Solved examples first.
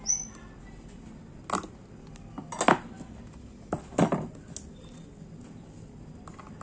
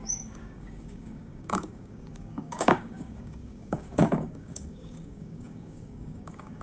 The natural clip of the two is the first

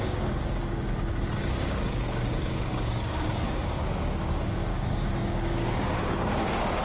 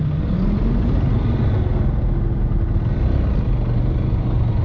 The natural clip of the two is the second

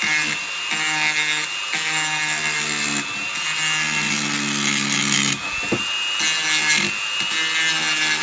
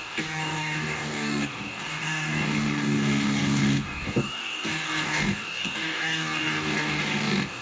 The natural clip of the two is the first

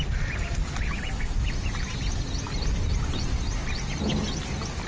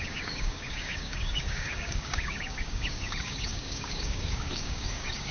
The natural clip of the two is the first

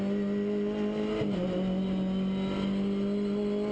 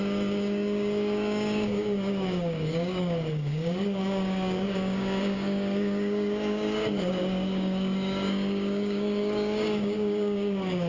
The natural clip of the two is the first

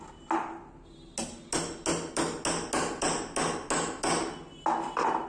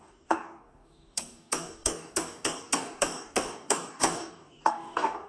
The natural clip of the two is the first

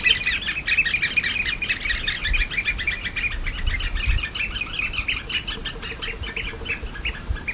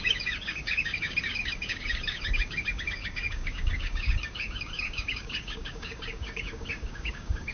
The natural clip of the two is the first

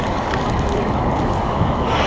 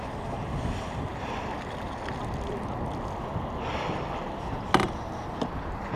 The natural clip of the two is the second